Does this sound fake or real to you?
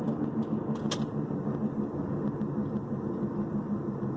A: real